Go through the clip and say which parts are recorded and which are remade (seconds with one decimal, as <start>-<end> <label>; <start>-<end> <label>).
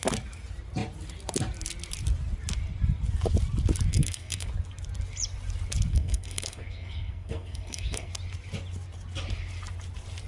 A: 0.0-3.9 recorded; 3.9-4.5 remade; 4.5-5.9 recorded; 5.9-8.1 remade; 8.1-10.3 recorded